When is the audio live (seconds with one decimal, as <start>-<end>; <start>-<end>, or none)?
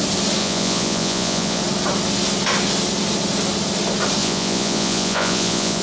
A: 0.0-0.4; 1.6-4.2